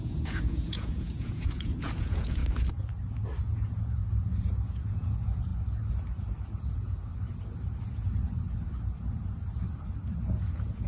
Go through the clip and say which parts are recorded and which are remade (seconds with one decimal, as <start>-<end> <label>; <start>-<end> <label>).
0.0-2.4 remade; 2.4-3.4 recorded; 3.4-4.0 remade; 4.0-4.5 recorded; 4.5-5.5 remade; 5.5-6.6 recorded; 6.6-7.1 remade; 7.1-10.3 recorded; 10.3-10.9 remade